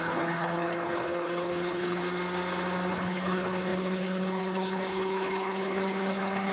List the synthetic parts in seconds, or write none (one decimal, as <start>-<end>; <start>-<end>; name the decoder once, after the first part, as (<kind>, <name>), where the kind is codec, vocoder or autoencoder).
0.0-2.0 (codec, HILCodec); 2.9-6.5